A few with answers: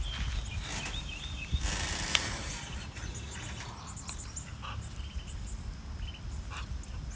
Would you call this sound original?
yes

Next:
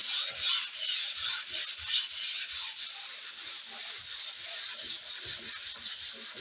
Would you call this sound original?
yes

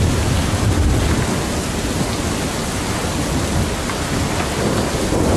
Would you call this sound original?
yes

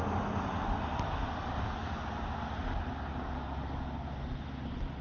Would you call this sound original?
yes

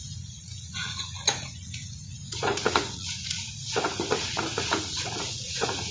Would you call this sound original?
no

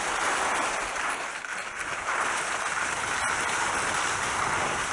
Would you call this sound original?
yes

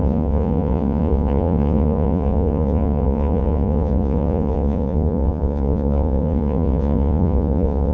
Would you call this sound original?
no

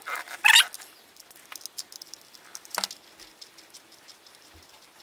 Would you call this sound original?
yes